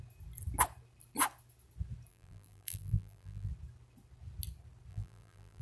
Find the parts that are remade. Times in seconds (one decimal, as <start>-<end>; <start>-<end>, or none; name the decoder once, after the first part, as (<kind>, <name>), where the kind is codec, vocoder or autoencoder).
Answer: 2.1-3.5 (vocoder, BigVGAN v2); 4.9-5.6

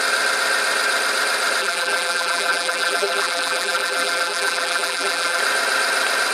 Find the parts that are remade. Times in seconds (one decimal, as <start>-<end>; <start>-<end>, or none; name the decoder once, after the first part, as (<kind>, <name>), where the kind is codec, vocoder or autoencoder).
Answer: 1.6-5.4 (vocoder, BigVGAN v2)

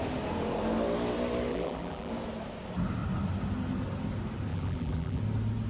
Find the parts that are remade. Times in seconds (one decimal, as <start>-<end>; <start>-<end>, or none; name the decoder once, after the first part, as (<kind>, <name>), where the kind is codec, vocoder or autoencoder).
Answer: 1.5-2.1 (vocoder, BigVGAN v2); 4.5-5.2

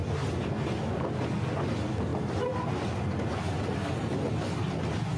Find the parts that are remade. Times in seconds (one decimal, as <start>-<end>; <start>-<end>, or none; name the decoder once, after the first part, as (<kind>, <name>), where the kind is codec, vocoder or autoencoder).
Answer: none

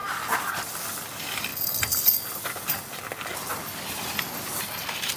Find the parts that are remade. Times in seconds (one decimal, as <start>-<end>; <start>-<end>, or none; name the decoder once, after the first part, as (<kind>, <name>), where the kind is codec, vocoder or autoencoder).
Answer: none

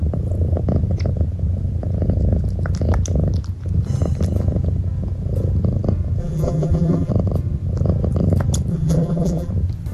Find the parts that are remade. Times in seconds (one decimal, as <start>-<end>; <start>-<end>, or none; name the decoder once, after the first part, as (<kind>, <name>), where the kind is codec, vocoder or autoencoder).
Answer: 6.2-7.1 (vocoder, BigVGAN v2); 8.7-9.5